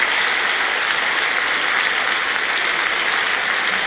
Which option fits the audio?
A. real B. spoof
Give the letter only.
A